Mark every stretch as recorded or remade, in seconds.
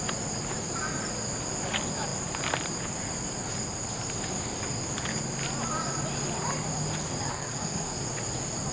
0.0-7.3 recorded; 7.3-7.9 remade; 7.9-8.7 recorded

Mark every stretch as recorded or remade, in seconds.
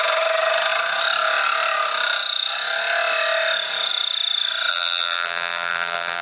0.0-4.7 recorded; 4.7-6.2 remade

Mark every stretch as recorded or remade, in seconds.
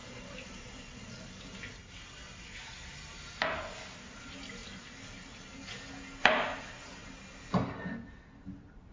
0.0-1.3 remade; 1.3-8.9 recorded